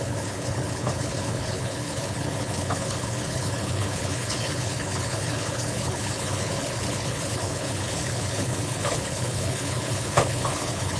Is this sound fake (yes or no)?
yes